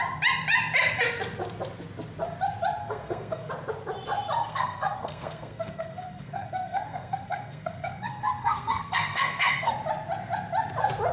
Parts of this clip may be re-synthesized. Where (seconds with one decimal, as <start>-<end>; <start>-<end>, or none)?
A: 2.8-3.5; 4.4-9.7